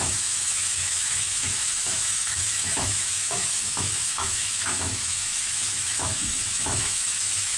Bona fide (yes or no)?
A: no